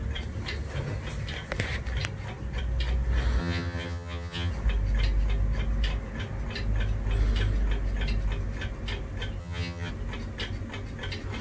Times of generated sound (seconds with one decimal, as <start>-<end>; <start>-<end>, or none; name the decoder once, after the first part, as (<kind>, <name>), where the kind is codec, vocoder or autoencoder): 3.4-4.5 (vocoder, HiFi-GAN); 9.4-9.9